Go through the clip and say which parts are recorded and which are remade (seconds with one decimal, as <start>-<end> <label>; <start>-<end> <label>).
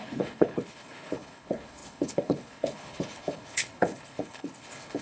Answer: 0.0-5.0 remade